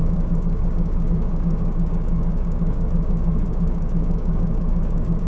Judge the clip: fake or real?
fake